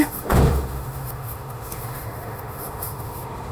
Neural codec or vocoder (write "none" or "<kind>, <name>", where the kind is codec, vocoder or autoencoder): autoencoder, DAC-VAE